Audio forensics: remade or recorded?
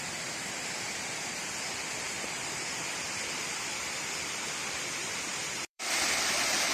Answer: remade